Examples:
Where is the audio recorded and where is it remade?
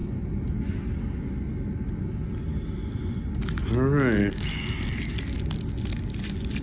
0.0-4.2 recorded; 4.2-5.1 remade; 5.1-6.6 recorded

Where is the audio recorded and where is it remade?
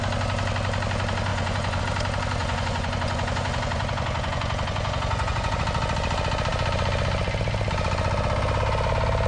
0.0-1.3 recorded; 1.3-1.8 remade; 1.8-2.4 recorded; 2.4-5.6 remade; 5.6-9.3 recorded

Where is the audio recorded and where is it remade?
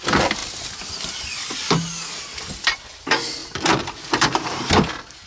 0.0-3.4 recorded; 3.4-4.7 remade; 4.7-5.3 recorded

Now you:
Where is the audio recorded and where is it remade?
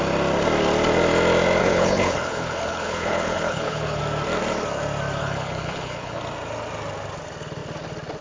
0.0-1.6 recorded; 1.6-4.0 remade; 4.0-5.2 recorded; 5.2-6.2 remade; 6.2-8.2 recorded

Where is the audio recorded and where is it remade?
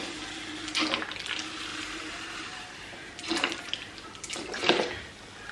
0.0-1.7 recorded; 1.7-3.6 remade; 3.6-4.6 recorded; 4.6-5.1 remade; 5.1-5.5 recorded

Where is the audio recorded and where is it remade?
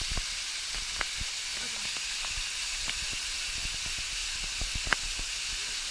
0.0-5.9 recorded